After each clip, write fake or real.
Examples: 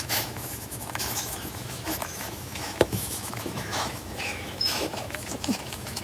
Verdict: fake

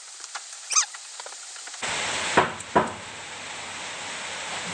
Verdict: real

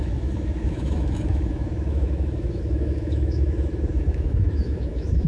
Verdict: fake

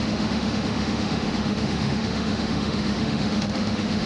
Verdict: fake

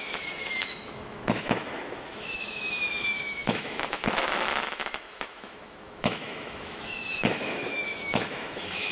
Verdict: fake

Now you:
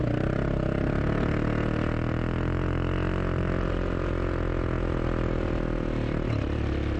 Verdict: real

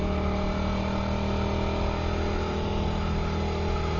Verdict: real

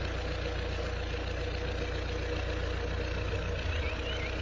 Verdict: real